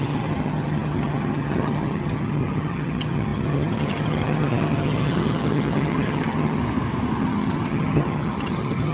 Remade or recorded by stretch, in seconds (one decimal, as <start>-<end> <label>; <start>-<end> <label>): 0.0-6.6 remade; 6.6-7.2 recorded; 7.2-8.9 remade